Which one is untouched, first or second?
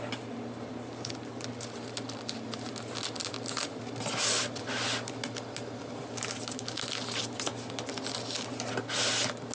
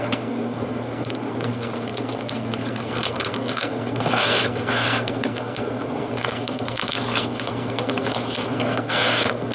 first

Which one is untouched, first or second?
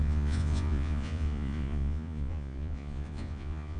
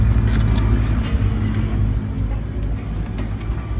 second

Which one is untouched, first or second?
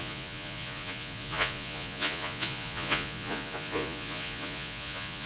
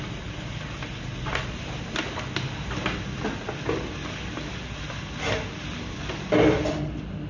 second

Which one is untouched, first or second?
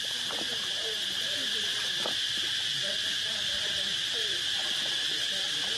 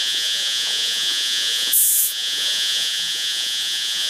first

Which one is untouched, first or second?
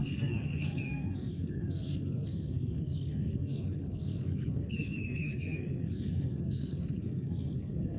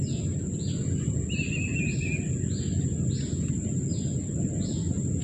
second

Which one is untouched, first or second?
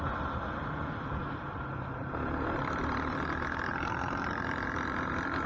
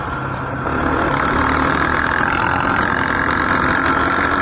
second